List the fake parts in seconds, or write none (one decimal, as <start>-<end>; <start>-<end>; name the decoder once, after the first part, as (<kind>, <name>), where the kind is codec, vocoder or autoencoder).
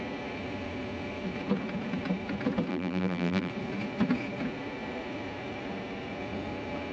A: 2.7-3.5 (vocoder, BigVGAN v2)